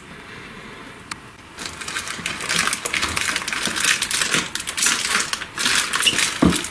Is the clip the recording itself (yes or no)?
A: yes